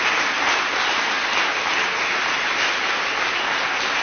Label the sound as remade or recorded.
recorded